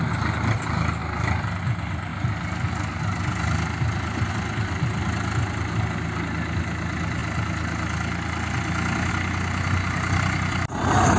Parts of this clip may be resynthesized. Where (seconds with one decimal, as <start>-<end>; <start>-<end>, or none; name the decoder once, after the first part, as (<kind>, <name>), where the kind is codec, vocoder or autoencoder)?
none